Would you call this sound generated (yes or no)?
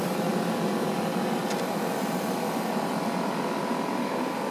no